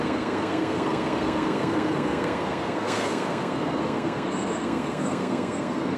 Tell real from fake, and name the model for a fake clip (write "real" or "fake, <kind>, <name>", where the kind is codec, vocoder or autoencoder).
fake, codec, SNAC